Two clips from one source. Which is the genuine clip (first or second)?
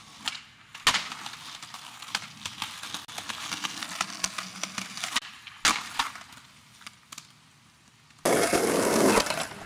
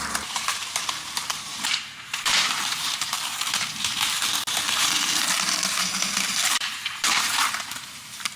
first